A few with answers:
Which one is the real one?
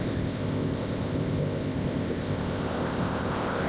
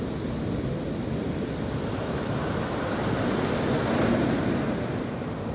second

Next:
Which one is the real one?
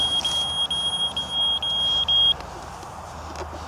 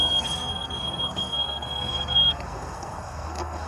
first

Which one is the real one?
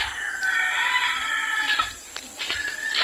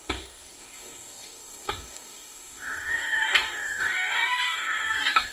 first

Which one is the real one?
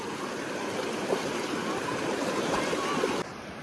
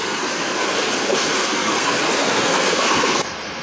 first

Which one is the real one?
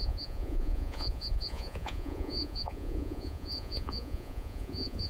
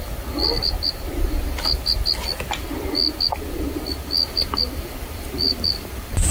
second